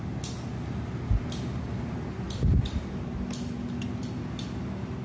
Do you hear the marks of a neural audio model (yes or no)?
no